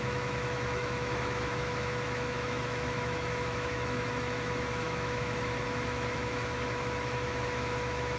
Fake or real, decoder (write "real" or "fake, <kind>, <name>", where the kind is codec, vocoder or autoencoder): fake, autoencoder, DAC-VAE